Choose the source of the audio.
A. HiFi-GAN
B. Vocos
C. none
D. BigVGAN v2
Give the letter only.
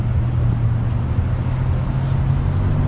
C